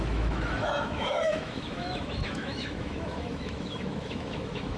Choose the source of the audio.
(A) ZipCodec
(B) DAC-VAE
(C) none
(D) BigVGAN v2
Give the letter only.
B